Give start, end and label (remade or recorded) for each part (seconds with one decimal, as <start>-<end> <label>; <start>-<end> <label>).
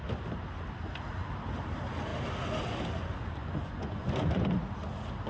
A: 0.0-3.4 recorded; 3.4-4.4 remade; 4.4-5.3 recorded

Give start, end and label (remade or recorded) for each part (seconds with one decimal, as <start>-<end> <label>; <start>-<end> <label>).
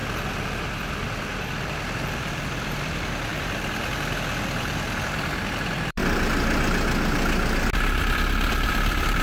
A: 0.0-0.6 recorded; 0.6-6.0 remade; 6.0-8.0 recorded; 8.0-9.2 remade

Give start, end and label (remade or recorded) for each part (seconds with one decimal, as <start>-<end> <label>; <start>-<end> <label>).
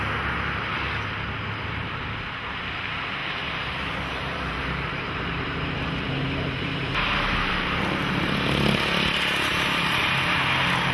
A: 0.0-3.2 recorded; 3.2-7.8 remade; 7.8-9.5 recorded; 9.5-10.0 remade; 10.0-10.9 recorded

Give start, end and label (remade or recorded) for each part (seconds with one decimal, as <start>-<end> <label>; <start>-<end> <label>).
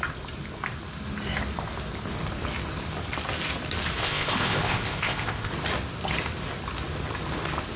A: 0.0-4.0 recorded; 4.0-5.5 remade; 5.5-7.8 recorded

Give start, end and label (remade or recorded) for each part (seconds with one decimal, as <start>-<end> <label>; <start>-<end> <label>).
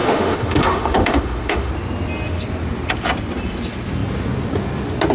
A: 0.0-1.7 remade; 1.7-5.1 recorded